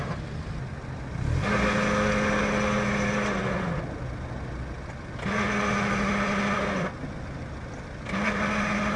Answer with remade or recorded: recorded